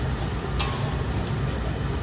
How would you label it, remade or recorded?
recorded